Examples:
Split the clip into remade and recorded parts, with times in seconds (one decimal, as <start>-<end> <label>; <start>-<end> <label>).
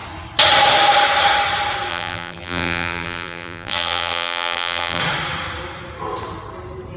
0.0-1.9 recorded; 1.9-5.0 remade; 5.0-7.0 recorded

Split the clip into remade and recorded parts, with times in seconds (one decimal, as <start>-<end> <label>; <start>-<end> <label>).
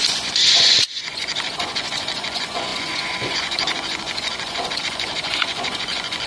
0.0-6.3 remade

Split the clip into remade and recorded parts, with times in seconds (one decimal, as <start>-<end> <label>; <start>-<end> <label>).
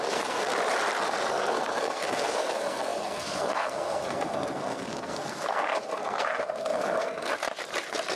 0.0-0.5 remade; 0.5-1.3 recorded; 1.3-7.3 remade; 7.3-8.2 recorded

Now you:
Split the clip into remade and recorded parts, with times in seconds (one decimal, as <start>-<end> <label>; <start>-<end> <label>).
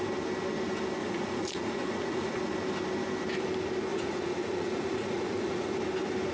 0.0-1.0 recorded; 1.0-2.4 remade; 2.4-3.9 recorded; 3.9-5.8 remade; 5.8-6.3 recorded